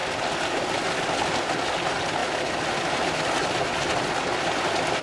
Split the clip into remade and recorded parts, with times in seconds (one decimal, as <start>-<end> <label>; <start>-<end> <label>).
0.0-5.0 recorded